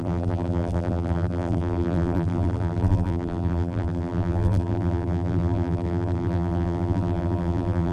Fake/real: fake